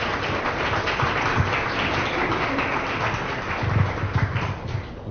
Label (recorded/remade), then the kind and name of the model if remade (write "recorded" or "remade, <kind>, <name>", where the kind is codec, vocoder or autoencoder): recorded